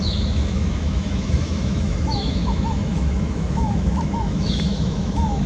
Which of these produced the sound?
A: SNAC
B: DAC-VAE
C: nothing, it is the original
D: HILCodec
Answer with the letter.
B